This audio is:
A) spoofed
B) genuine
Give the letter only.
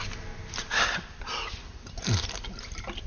B